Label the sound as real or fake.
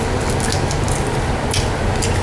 real